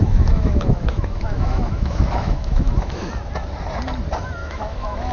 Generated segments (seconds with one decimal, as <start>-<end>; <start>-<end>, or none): 0.0-3.1; 4.4-5.1